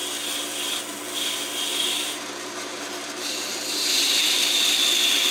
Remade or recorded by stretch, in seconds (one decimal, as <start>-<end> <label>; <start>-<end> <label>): 0.0-1.7 recorded; 1.7-4.8 remade; 4.8-5.3 recorded